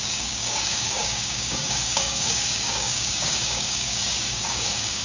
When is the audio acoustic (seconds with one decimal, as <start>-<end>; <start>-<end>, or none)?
none